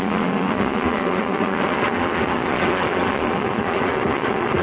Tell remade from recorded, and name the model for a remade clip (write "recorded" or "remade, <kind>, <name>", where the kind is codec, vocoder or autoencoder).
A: remade, vocoder, Vocos